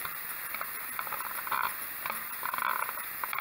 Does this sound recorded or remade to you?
recorded